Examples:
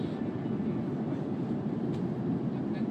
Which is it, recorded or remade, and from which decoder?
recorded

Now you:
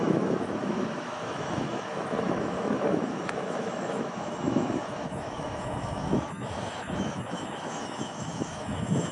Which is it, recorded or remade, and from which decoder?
remade, autoencoder, DAC-VAE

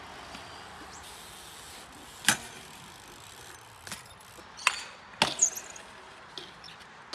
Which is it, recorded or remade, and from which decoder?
recorded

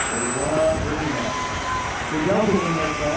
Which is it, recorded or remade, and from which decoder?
recorded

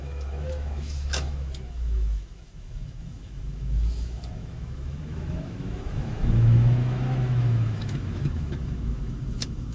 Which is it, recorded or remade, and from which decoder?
remade, autoencoder, DAC-VAE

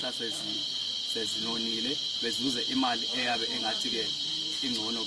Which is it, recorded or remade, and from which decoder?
recorded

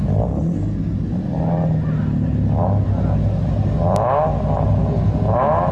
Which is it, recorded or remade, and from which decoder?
recorded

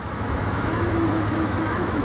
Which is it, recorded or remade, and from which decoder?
remade, autoencoder, DAC-VAE